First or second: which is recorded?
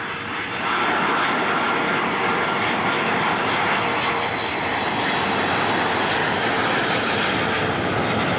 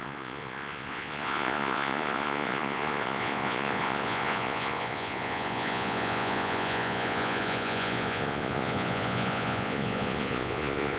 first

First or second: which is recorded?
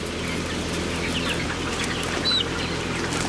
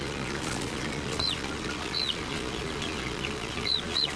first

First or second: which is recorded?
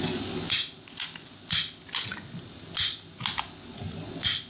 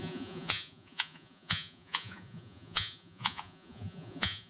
first